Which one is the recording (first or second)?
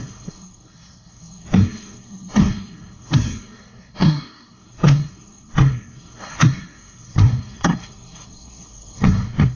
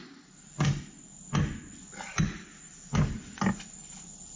second